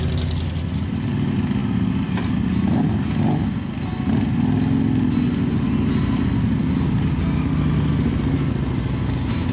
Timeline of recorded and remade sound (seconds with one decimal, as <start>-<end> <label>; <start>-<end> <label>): 0.0-9.5 recorded

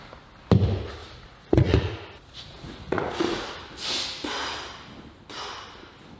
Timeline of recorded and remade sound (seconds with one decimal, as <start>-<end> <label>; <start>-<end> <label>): 0.0-1.0 recorded; 1.0-3.6 remade; 3.6-6.2 recorded

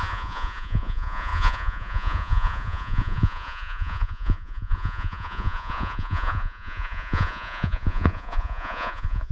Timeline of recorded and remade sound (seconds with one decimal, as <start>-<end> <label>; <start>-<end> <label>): 0.0-9.3 remade